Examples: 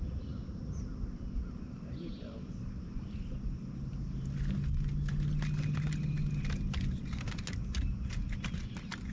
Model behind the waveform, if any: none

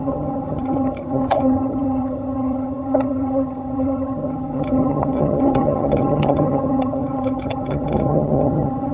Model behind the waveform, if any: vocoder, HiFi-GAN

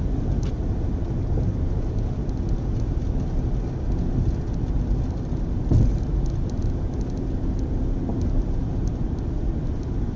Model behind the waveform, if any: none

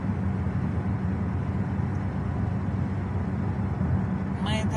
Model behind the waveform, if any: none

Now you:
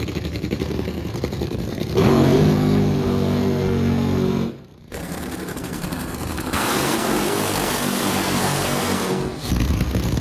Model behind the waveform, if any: codec, SNAC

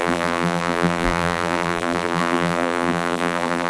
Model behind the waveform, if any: vocoder, BigVGAN v2